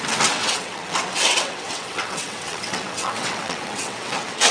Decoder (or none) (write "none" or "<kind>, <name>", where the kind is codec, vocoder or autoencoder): vocoder, WaveNeXt